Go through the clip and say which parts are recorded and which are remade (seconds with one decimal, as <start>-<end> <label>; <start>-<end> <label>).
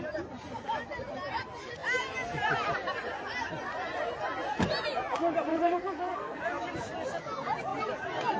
0.0-5.5 recorded; 5.5-6.4 remade; 6.4-8.4 recorded